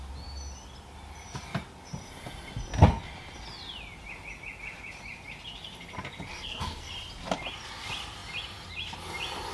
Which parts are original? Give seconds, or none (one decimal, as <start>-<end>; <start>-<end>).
0.0-6.3; 6.9-9.5